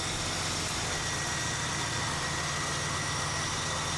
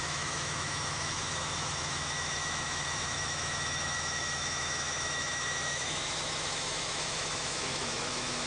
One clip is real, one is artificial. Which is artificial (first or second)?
second